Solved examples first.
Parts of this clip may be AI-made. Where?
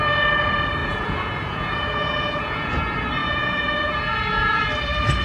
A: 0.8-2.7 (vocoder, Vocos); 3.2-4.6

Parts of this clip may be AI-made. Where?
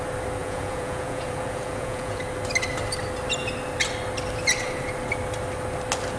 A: 0.4-2.2 (vocoder, Vocos)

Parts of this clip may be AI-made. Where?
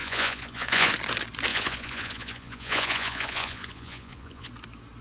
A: 0.0-0.9 (vocoder, Vocos); 1.5-4.5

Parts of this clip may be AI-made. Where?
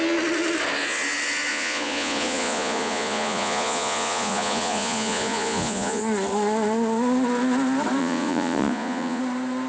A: 1.5-6.0 (vocoder, Vocos); 8.0-9.2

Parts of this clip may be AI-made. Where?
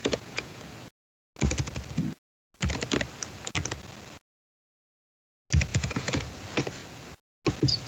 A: 0.0-0.6 (vocoder, Vocos); 5.7-6.2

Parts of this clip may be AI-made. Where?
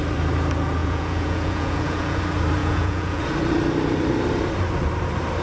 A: 0.8-2.2 (vocoder, Vocos); 2.6-3.2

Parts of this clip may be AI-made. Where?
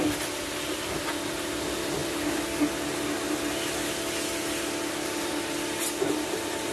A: none